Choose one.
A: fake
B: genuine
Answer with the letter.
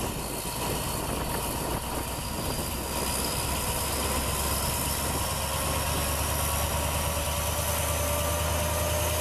B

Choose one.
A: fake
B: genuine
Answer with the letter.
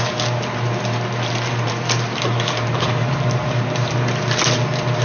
B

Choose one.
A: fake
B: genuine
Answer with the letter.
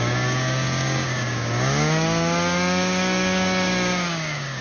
A